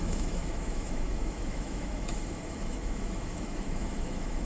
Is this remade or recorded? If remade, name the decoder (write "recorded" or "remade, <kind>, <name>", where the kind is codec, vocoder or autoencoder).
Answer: remade, autoencoder, DAC-VAE